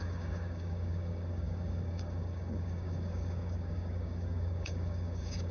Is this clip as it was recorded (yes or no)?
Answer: no